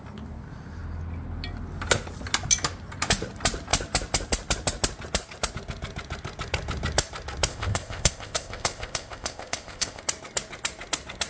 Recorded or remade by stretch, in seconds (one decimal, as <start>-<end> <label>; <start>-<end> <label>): 0.0-7.5 recorded; 7.5-10.0 remade; 10.0-11.3 recorded